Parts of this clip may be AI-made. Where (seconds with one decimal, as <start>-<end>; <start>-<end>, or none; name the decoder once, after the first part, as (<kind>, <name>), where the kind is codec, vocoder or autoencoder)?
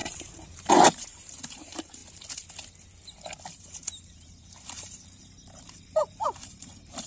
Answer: 0.0-2.0 (vocoder, BigVGAN v2); 3.5-7.1